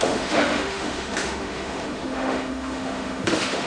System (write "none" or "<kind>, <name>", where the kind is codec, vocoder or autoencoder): autoencoder, DAC-VAE